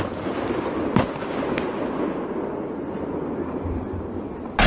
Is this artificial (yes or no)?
no